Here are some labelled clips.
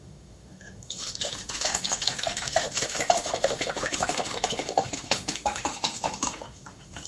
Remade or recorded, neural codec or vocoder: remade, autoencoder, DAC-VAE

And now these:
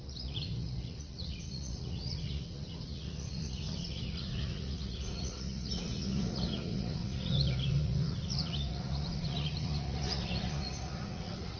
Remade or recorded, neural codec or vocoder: remade, vocoder, Vocos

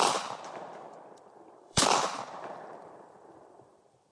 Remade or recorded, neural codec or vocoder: remade, vocoder, BigVGAN v2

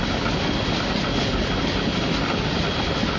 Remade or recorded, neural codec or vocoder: recorded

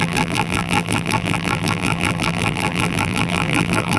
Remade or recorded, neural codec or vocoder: remade, vocoder, BigVGAN v2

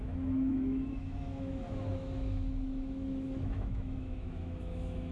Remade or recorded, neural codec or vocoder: remade, autoencoder, DAC-VAE